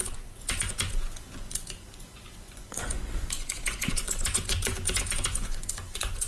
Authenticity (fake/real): fake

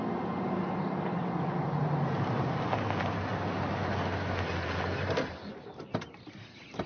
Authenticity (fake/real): real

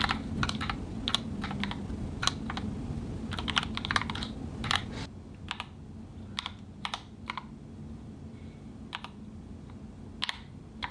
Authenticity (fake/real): real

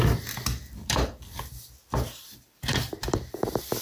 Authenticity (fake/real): fake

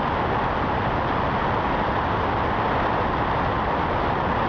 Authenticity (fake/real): real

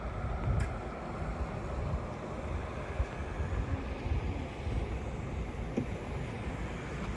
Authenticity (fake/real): real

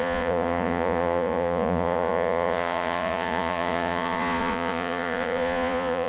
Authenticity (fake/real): fake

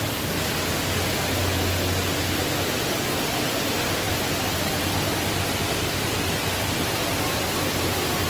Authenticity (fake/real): real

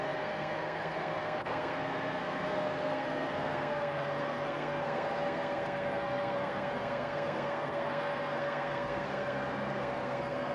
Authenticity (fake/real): fake